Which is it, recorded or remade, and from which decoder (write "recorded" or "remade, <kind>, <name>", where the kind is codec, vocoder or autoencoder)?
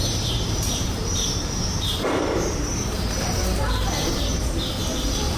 remade, vocoder, BigVGAN v2